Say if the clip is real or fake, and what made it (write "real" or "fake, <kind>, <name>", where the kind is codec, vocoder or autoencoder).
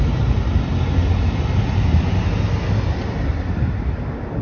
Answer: real